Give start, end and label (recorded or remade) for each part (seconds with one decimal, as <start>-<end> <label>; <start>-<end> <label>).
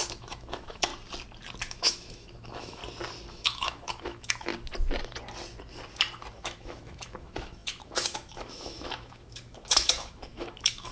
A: 0.0-0.9 remade; 0.9-1.6 recorded; 1.6-2.8 remade; 2.8-3.3 recorded; 3.3-4.5 remade; 4.5-6.4 recorded; 6.4-10.9 remade